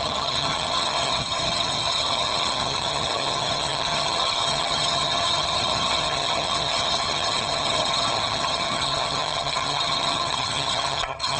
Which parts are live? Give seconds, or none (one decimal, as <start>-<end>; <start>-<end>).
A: none